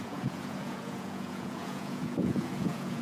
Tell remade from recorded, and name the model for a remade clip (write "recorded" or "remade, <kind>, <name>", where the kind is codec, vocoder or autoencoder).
remade, vocoder, Vocos